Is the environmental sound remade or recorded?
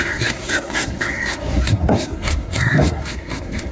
remade